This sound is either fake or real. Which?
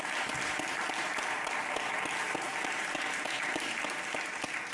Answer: real